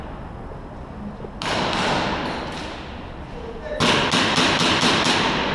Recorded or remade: recorded